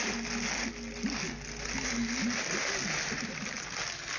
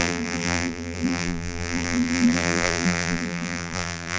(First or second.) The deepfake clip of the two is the second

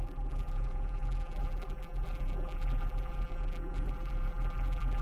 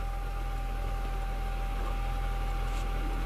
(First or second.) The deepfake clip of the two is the first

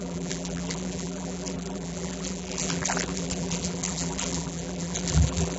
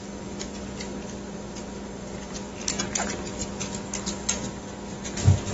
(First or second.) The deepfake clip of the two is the first